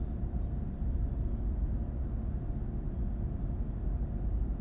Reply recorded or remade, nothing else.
recorded